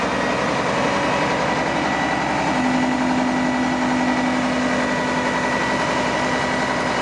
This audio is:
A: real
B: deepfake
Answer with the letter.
A